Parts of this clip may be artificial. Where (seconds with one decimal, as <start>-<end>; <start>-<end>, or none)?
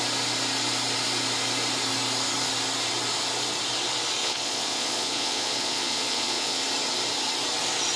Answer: 4.2-6.6